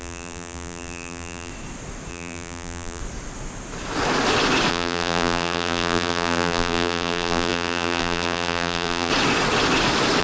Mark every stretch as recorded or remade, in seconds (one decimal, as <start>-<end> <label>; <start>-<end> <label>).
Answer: 0.0-1.5 remade; 1.5-2.1 recorded; 2.1-3.0 remade; 3.0-4.7 recorded; 4.7-9.1 remade; 9.1-10.2 recorded